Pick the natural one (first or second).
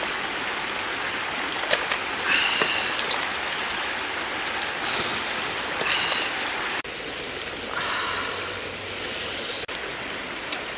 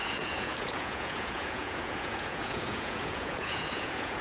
first